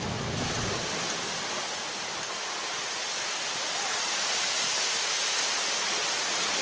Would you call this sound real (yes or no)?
yes